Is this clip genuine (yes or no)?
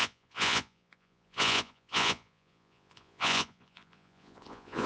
no